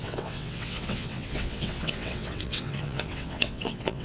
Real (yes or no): no